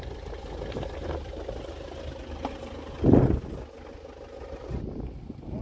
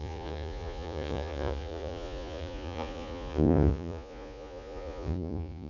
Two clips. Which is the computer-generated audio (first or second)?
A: second